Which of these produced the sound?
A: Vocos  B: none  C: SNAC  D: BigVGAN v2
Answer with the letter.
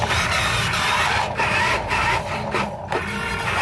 D